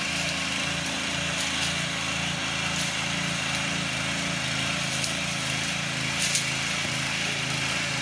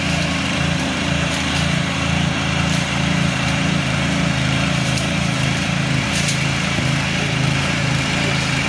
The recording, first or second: first